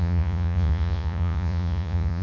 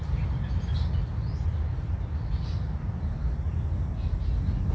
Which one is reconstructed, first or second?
first